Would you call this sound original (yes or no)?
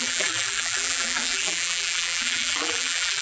no